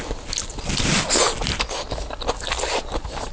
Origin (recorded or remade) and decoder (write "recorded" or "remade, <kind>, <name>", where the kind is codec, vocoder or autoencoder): recorded